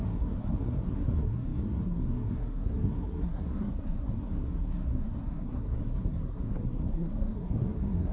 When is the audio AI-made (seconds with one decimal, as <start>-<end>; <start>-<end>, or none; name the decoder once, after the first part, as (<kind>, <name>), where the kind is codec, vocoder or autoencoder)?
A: 0.0-8.1 (codec, SNAC)